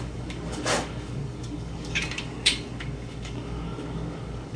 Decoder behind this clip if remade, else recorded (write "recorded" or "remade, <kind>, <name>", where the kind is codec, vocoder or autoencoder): remade, codec, DAC